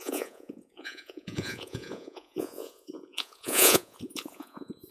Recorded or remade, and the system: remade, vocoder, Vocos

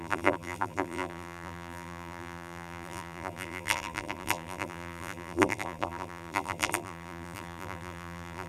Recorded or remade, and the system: remade, vocoder, BigVGAN v2